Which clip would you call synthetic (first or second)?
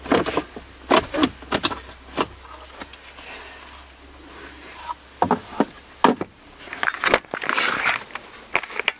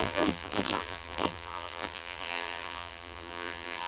second